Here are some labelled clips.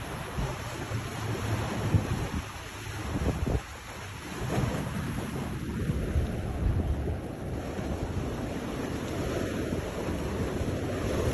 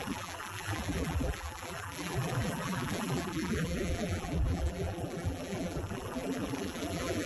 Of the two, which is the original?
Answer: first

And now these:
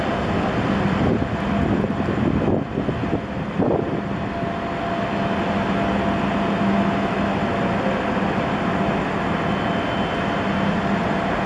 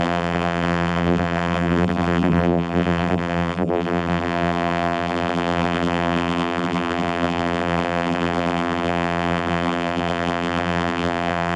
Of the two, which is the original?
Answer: first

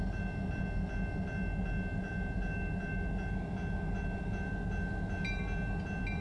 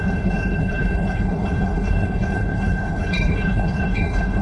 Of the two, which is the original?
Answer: first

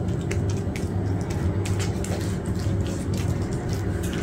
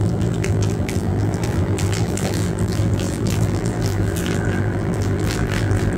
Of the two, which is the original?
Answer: first